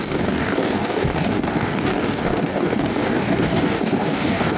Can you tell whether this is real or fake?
fake